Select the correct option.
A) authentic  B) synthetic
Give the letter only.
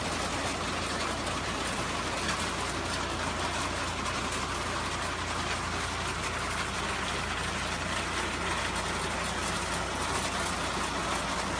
A